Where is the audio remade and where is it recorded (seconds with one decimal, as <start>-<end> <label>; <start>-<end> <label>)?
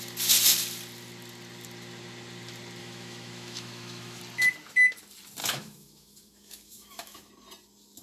0.0-2.8 recorded; 2.8-4.2 remade; 4.2-5.4 recorded; 5.4-7.3 remade; 7.3-8.0 recorded